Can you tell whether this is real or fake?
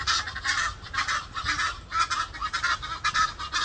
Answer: real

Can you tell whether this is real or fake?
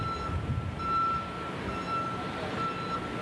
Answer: real